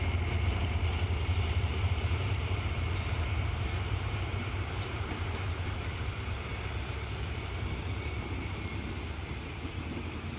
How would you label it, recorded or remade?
remade